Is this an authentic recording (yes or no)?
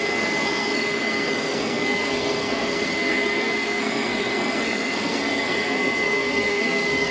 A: no